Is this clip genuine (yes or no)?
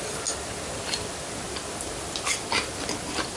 yes